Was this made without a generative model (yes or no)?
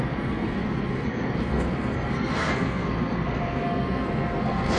no